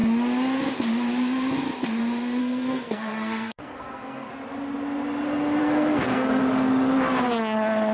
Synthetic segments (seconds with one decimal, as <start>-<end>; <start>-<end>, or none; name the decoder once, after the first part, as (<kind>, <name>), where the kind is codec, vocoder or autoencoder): 2.4-4.3 (codec, SNAC); 5.6-6.4